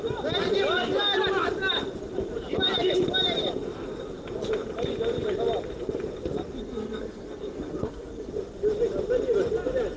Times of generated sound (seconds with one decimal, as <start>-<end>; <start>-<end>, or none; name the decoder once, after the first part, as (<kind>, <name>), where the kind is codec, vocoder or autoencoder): 6.6-8.3 (codec, SNAC)